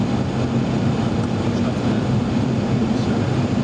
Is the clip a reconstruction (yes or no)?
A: no